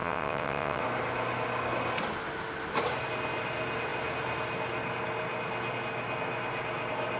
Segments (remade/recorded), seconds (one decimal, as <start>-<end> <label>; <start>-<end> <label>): 0.0-0.8 remade; 0.8-7.2 recorded